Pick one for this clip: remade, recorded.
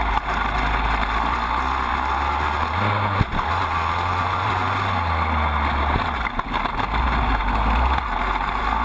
recorded